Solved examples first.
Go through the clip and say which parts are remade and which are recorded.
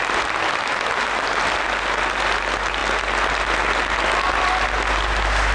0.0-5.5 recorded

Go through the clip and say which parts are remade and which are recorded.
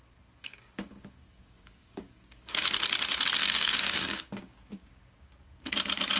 0.0-0.4 recorded; 0.4-2.6 remade; 2.6-3.4 recorded; 3.4-5.7 remade; 5.7-6.2 recorded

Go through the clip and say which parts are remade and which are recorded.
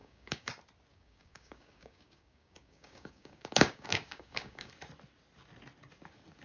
0.0-0.5 remade; 0.5-0.9 recorded; 0.9-4.7 remade; 4.7-6.4 recorded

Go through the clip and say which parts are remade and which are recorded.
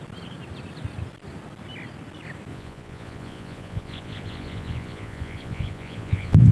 0.0-2.5 recorded; 2.5-6.5 remade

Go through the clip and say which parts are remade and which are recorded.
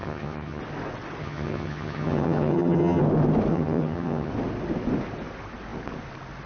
0.0-0.6 remade; 0.6-1.2 recorded; 1.2-3.0 remade; 3.0-3.5 recorded; 3.5-4.3 remade; 4.3-6.5 recorded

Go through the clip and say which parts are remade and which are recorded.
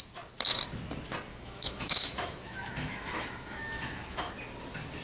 0.0-1.3 recorded; 1.3-4.3 remade; 4.3-5.0 recorded